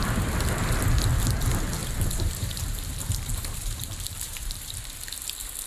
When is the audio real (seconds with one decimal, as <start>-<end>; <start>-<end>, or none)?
0.0-1.8; 5.2-5.7